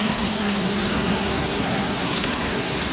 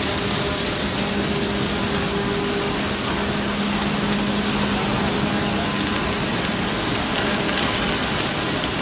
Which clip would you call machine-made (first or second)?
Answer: first